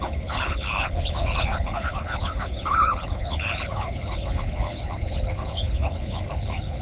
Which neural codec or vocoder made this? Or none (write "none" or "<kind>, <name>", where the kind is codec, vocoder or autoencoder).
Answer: codec, HILCodec